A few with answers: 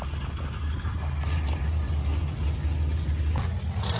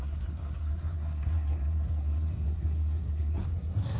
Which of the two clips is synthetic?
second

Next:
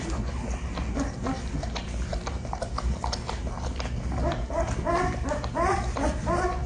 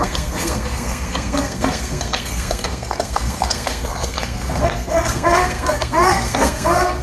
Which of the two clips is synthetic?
second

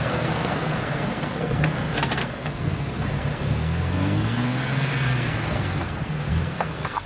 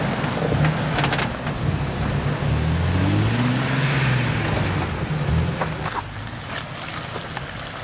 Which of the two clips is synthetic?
first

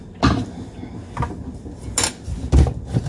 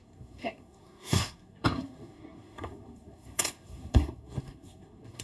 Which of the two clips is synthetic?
second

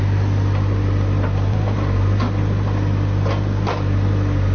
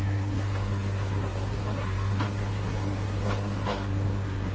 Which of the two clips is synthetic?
second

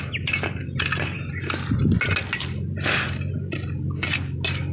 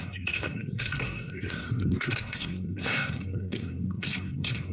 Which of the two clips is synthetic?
second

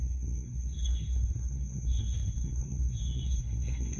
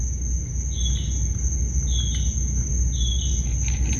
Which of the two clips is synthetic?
first